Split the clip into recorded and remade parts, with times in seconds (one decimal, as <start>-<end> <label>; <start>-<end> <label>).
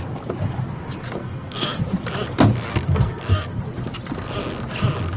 0.0-1.2 recorded; 1.2-1.8 remade; 1.8-2.7 recorded; 2.7-3.6 remade; 3.6-5.2 recorded